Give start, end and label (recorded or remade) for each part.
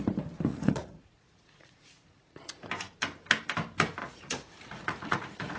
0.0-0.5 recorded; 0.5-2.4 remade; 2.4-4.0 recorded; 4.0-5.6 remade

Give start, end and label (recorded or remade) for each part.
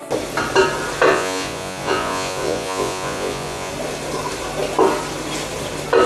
0.0-1.1 recorded; 1.1-3.7 remade; 3.7-6.1 recorded